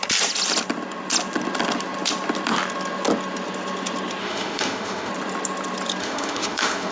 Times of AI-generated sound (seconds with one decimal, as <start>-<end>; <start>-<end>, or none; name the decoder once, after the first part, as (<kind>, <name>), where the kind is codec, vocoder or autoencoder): 4.2-5.1 (autoencoder, DAC-VAE); 6.0-6.9

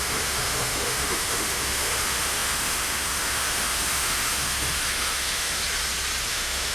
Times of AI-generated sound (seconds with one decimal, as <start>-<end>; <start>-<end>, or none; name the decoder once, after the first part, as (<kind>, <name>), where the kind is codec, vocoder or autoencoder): 0.0-5.6 (autoencoder, DAC-VAE); 6.3-6.7

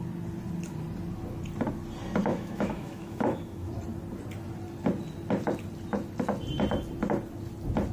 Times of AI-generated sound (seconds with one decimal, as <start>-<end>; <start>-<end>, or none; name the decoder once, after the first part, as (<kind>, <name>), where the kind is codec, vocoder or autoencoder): 2.3-3.7 (autoencoder, DAC-VAE)

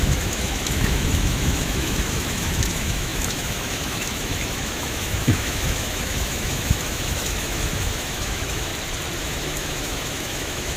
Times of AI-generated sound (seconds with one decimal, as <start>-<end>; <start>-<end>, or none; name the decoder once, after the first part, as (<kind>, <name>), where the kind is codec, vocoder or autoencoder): 0.0-8.7 (autoencoder, DAC-VAE); 9.2-10.8

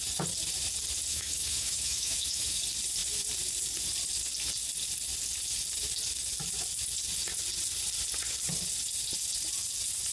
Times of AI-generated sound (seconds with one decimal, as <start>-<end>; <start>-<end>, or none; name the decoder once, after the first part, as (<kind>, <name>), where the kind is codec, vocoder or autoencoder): 1.1-2.6 (autoencoder, DAC-VAE)

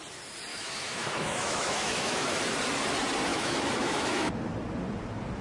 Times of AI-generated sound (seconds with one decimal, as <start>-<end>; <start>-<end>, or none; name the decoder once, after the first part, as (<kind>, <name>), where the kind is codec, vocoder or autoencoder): 0.5-2.4 (autoencoder, DAC-VAE); 3.3-4.3